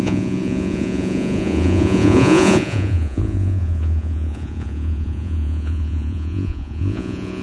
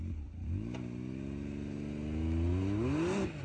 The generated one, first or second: first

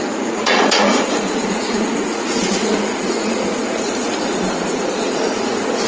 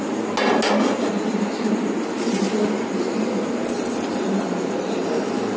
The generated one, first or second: first